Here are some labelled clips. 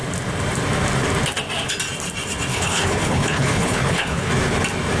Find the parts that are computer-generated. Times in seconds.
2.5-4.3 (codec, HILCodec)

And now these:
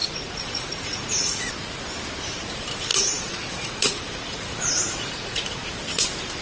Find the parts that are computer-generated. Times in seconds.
0.0-1.5 (vocoder, Vocos); 2.9-5.6